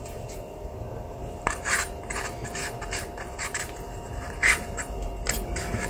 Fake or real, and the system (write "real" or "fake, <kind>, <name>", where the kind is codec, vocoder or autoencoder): fake, vocoder, BigVGAN v2